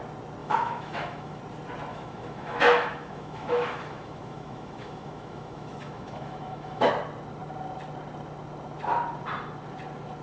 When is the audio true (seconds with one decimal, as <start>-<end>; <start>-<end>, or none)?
0.0-0.4; 1.4-1.9; 6.9-10.2